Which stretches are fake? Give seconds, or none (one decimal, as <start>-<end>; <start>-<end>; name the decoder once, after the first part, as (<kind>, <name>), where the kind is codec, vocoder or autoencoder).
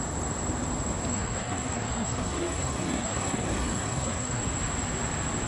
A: 1.1-4.4 (codec, SNAC)